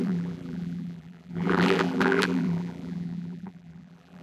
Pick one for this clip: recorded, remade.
remade